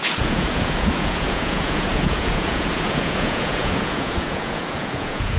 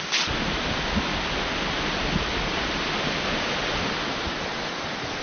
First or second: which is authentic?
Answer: second